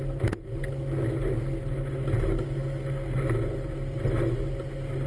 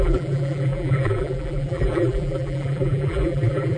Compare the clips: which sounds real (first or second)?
first